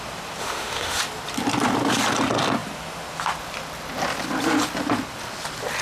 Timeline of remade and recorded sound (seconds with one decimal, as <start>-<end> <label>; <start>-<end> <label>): 0.0-0.4 recorded; 0.4-1.0 remade; 1.0-5.8 recorded